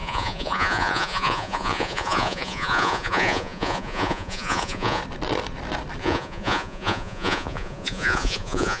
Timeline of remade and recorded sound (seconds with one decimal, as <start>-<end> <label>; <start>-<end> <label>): 0.0-5.0 remade; 5.0-6.0 recorded; 6.0-8.8 remade